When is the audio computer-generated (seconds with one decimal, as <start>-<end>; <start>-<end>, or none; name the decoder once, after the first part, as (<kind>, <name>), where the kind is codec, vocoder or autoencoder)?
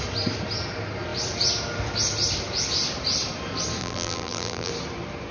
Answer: 3.8-4.7 (vocoder, BigVGAN v2)